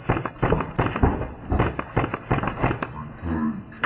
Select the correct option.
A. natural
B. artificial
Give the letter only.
A